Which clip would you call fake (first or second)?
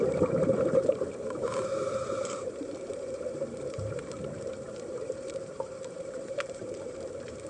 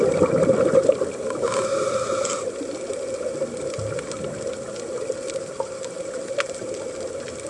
first